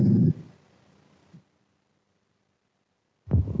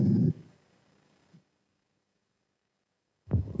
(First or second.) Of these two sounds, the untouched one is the first